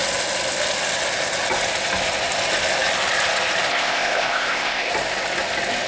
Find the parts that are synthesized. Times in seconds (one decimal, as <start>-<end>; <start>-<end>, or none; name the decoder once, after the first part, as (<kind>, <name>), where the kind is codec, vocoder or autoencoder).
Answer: 3.7-4.9 (codec, ZipCodec)